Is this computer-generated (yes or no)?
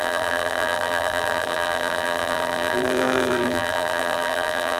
yes